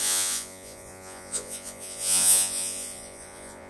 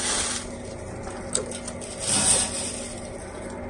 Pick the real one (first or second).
second